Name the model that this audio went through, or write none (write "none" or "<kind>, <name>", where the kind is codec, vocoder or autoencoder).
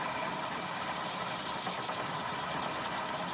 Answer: none